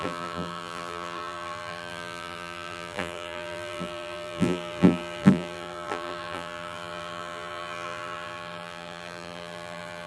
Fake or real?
fake